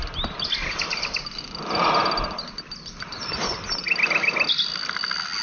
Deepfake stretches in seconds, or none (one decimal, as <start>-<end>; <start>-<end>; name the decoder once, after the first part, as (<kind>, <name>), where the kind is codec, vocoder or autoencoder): none